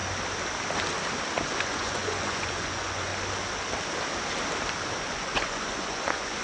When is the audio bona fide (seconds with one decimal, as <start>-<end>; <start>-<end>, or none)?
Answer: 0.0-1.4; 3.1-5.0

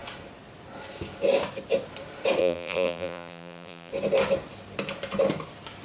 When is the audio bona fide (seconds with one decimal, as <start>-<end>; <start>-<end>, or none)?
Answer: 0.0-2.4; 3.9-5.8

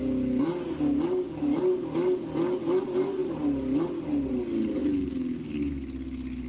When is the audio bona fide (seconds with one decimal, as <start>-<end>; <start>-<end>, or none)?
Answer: 1.6-4.8; 5.7-6.5

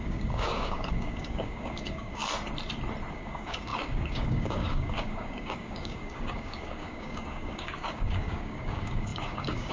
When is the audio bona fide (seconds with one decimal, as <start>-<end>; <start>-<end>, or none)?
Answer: 2.2-3.1